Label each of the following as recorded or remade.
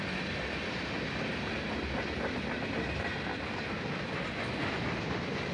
recorded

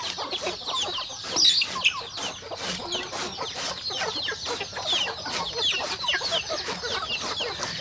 recorded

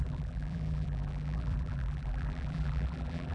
remade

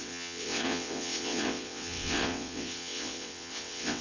remade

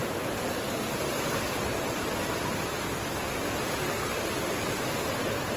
recorded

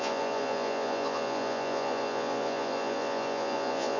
remade